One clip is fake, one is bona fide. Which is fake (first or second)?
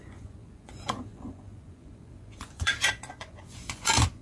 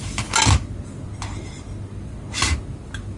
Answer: first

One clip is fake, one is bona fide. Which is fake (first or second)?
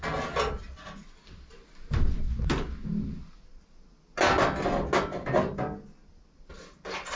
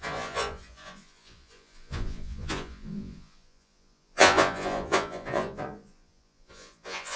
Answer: second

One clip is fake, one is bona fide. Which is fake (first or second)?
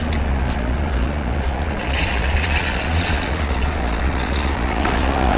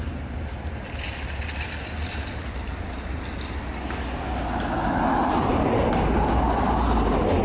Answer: first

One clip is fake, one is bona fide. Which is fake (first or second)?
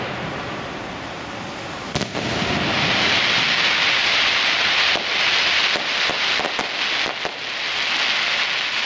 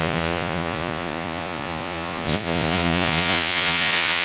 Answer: second